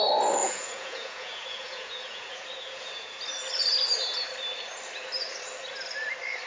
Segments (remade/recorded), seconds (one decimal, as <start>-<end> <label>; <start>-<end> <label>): 0.0-0.4 recorded; 0.4-3.2 remade; 3.2-6.5 recorded